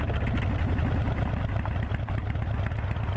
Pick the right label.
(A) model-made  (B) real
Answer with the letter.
B